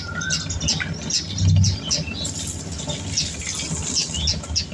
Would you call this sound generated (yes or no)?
no